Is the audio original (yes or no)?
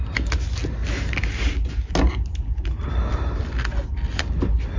yes